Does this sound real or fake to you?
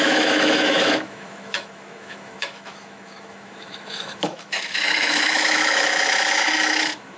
fake